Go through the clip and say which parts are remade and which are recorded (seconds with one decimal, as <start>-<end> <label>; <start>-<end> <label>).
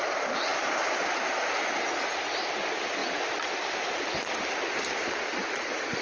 0.0-6.0 recorded